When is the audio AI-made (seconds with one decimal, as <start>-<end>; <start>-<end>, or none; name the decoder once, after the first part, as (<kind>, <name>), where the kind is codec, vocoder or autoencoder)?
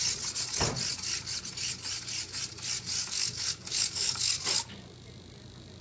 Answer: 3.0-4.3 (codec, DAC)